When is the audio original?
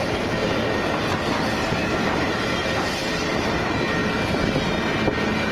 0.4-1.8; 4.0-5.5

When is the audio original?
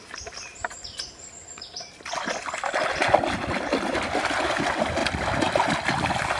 0.0-0.5; 2.4-5.0; 5.5-6.4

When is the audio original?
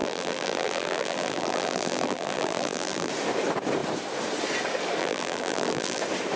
3.1-5.0; 6.0-6.4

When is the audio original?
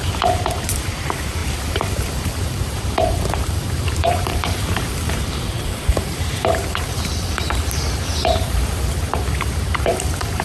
none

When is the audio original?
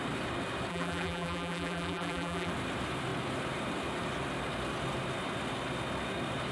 0.0-0.7; 2.5-6.5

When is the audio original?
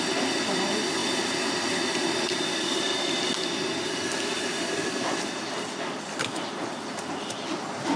0.0-8.0